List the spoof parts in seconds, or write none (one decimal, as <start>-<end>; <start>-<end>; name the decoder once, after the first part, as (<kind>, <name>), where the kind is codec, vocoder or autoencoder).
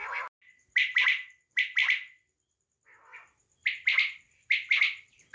none